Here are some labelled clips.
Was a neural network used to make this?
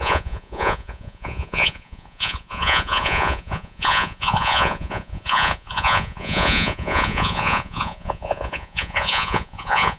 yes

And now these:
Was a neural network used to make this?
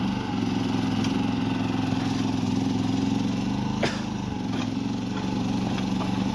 no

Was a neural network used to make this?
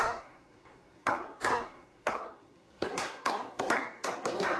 yes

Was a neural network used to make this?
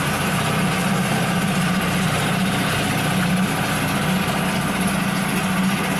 no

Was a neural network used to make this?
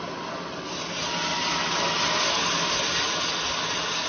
no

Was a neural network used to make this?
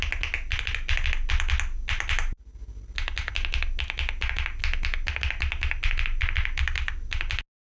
no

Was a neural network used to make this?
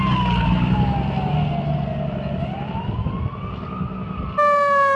no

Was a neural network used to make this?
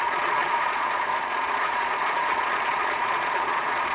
yes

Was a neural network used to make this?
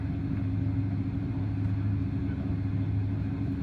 no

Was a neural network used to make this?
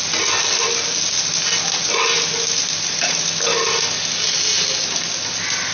no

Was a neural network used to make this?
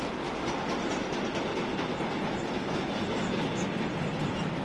no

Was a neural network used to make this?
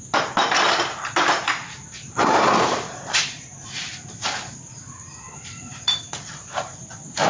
yes